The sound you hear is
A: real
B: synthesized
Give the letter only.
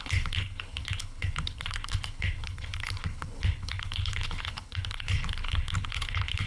B